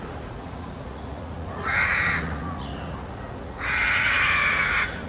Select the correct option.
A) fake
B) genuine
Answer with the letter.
A